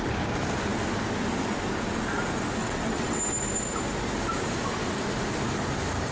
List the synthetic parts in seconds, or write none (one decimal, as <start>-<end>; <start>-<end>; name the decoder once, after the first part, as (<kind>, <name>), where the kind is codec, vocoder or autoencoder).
2.6-3.2 (vocoder, WaveNeXt)